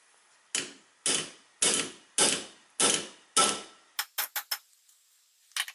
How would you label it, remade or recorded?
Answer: recorded